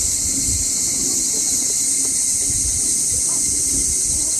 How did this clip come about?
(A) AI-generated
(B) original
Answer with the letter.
B